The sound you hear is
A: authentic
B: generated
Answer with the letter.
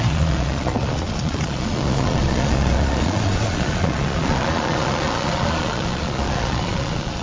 B